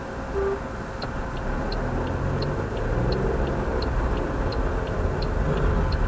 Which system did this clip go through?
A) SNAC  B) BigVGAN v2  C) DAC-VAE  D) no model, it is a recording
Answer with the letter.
D